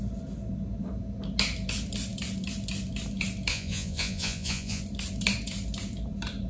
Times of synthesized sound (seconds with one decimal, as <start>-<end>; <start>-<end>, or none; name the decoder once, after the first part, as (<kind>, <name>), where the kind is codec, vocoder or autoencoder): 3.5-4.8 (vocoder, Vocos)

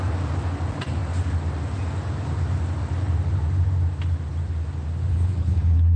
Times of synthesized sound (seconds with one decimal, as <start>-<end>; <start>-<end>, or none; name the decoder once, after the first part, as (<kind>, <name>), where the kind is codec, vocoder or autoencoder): 5.1-6.0 (codec, HILCodec)